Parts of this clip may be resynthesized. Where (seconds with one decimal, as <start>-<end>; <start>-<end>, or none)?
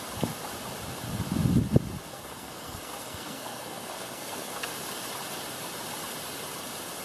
2.1-4.7